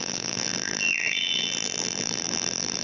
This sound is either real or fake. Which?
fake